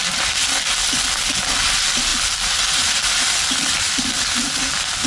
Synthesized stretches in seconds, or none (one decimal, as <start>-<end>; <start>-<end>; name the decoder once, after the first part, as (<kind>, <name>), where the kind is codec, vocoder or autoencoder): none